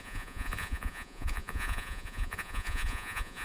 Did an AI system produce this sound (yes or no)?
yes